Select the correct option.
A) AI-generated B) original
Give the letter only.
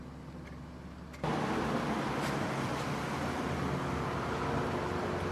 B